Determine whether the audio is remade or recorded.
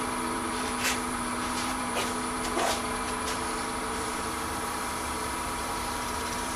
remade